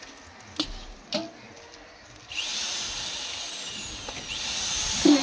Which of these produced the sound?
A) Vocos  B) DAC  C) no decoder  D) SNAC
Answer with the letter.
C